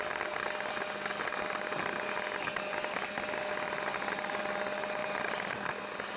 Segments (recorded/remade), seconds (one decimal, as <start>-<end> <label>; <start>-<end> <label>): 0.0-5.0 recorded; 5.0-5.7 remade; 5.7-6.2 recorded